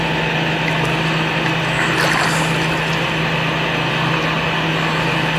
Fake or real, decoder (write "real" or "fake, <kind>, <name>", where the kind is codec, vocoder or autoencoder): real